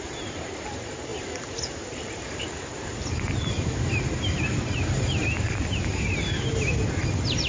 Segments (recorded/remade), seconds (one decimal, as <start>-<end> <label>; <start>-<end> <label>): 0.0-7.5 remade